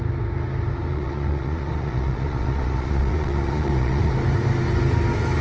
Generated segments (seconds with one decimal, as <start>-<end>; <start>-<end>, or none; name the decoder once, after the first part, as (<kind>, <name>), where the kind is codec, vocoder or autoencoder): 0.9-4.1 (vocoder, Vocos)